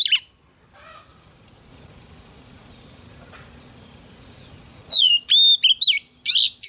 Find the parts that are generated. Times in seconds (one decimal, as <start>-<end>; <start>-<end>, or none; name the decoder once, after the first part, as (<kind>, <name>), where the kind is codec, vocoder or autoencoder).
1.1-5.1 (vocoder, Vocos)